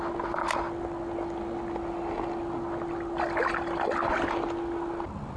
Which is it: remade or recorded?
recorded